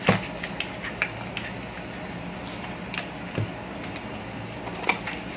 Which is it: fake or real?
real